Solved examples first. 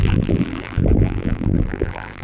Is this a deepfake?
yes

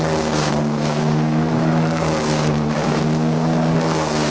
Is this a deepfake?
yes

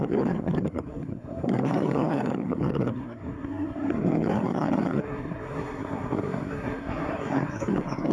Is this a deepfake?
yes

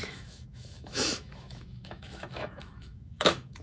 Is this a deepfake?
yes